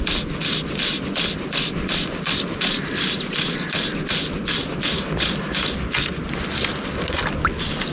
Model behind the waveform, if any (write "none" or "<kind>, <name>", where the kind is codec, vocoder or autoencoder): none